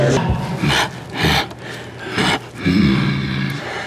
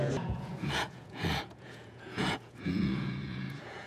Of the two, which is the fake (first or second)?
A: second